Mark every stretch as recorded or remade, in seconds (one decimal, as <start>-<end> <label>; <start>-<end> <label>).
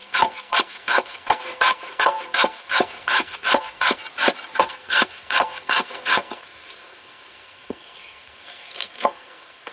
0.0-4.0 remade; 4.0-4.6 recorded; 4.6-9.7 remade